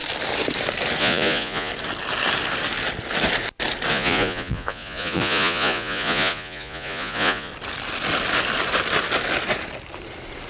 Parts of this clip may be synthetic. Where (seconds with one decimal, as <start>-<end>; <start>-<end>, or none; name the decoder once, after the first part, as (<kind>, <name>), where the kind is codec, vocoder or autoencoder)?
1.0-1.7 (vocoder, Vocos); 3.9-7.5